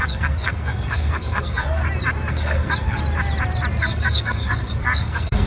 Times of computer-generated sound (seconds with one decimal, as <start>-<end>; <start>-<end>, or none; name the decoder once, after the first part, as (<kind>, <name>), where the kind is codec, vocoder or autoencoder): 0.0-1.8 (codec, SNAC); 2.3-3.0; 3.8-5.5